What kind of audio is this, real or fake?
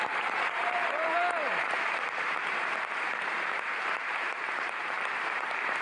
fake